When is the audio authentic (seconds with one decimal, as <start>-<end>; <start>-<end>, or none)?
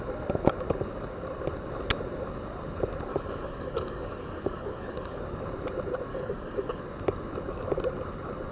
0.0-3.1; 5.2-6.1; 6.8-8.5